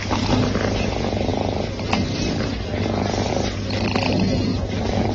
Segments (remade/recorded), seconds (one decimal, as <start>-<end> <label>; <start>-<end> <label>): 0.0-4.5 recorded; 4.5-5.1 remade